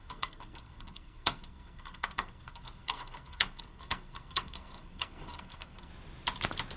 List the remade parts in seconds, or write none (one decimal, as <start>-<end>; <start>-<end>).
0.0-5.9